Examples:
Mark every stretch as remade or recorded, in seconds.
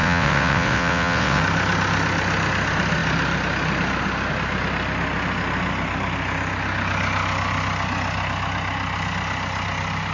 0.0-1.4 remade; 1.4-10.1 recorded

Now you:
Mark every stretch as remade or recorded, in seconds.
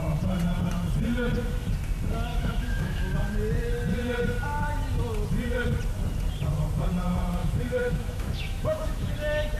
0.0-2.3 recorded; 2.3-3.0 remade; 3.0-7.4 recorded; 7.4-9.1 remade; 9.1-9.6 recorded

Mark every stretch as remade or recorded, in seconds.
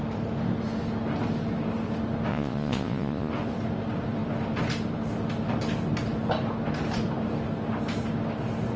0.0-2.3 recorded; 2.3-3.3 remade; 3.3-8.8 recorded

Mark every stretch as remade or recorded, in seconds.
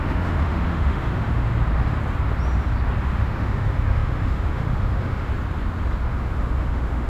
0.0-1.5 remade; 1.5-3.0 recorded; 3.0-5.3 remade; 5.3-6.1 recorded; 6.1-7.1 remade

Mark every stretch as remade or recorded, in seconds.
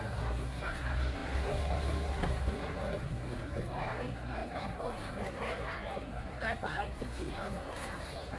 0.0-8.4 remade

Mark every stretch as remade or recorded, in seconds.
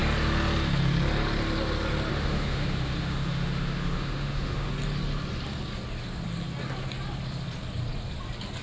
0.0-2.1 recorded; 2.1-4.7 remade; 4.7-8.6 recorded